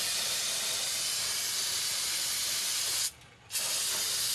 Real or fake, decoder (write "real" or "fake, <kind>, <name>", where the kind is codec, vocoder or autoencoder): fake, vocoder, BigVGAN v2